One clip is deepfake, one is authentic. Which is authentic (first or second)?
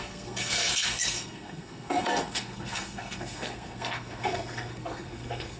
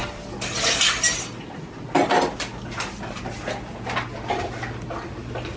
second